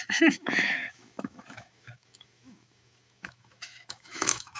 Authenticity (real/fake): fake